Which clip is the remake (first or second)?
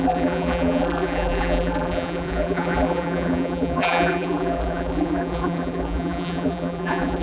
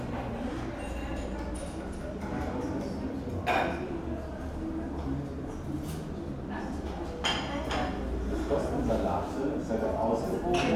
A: first